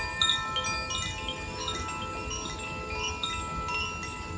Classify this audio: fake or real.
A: real